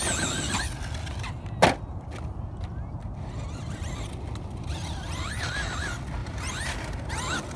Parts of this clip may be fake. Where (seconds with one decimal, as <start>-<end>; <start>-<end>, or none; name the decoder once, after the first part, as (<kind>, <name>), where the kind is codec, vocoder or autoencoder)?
6.2-7.1 (vocoder, BigVGAN v2)